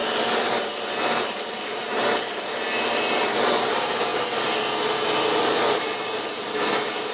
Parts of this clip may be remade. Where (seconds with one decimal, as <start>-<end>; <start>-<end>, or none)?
0.9-4.1; 5.4-7.1